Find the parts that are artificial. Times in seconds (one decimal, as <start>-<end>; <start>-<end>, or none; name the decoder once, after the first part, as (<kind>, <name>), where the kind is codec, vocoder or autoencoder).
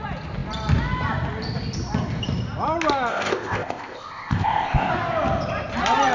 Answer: 3.1-4.9 (codec, ZipCodec)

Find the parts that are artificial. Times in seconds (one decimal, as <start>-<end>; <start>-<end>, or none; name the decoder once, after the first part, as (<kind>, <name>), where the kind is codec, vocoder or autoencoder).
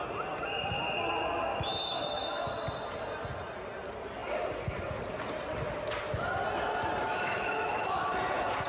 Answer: 1.5-2.5 (autoencoder, DAC-VAE); 7.1-8.1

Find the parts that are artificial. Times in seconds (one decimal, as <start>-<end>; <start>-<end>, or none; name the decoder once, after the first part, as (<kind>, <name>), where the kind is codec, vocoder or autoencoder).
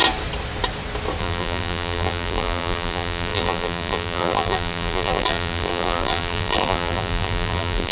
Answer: 1.2-7.9 (vocoder, BigVGAN v2)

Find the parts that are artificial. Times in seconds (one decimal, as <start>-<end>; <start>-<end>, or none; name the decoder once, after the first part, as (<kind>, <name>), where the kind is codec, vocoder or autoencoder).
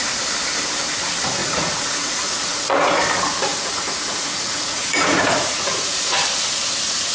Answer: 1.4-3.0 (vocoder, Vocos); 3.5-5.9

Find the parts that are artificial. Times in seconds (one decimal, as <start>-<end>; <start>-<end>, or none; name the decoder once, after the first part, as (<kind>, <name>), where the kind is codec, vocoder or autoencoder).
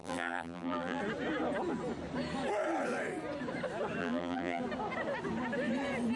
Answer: 0.0-1.0 (vocoder, BigVGAN v2); 4.0-4.6